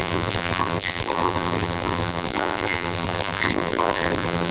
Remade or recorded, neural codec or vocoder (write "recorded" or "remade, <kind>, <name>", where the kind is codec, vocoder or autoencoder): remade, vocoder, BigVGAN v2